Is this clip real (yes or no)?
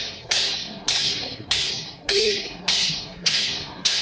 no